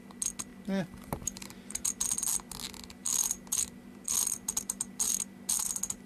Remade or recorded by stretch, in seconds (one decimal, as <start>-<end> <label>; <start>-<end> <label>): 0.0-0.5 recorded; 0.5-1.8 remade; 1.8-3.0 recorded; 3.0-5.1 remade; 5.1-6.1 recorded